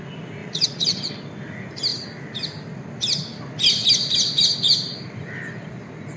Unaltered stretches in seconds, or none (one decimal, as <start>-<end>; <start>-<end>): 0.0-0.4; 1.1-6.2

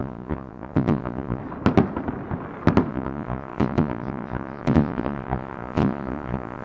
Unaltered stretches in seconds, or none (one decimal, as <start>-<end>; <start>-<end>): 1.4-2.9

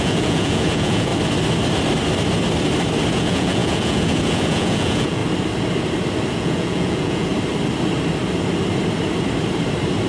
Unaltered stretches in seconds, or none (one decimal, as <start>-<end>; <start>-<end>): 1.1-3.1; 5.2-6.3; 7.3-10.1